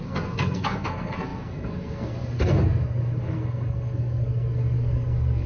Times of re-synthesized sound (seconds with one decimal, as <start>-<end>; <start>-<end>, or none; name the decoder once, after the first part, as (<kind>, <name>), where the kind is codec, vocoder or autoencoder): 0.0-5.5 (codec, SNAC)